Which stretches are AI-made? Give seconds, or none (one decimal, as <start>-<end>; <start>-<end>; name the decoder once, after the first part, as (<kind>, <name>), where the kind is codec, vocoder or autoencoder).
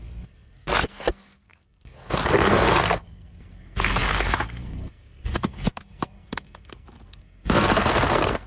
0.0-8.5 (codec, SNAC)